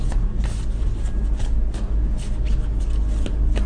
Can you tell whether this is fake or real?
real